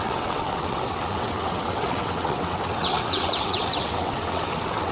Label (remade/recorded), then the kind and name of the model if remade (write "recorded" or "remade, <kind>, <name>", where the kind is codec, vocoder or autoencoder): remade, vocoder, WaveNeXt